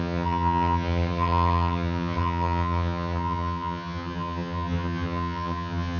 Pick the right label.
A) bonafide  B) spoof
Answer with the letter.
B